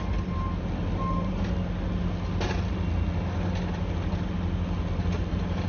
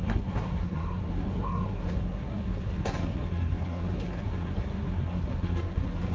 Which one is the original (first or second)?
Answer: first